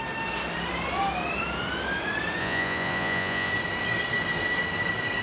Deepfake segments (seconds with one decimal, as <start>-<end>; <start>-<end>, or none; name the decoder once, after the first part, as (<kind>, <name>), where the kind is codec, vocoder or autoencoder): 2.4-3.5 (vocoder, Vocos)